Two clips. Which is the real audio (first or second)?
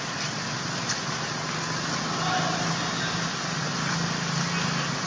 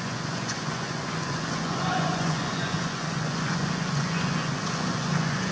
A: first